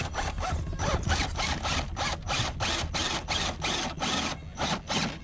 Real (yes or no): yes